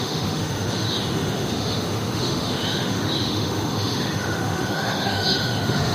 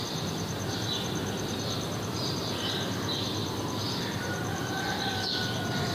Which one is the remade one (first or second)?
first